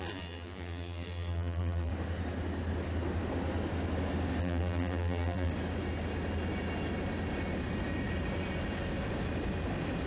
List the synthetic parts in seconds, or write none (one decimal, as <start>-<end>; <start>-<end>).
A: 0.0-1.9; 4.4-5.5